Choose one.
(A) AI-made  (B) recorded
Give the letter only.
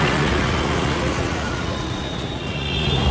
A